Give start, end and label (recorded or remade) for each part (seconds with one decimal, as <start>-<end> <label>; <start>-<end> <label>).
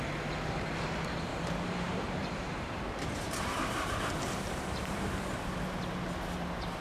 0.0-1.3 recorded; 1.3-5.4 remade; 5.4-6.8 recorded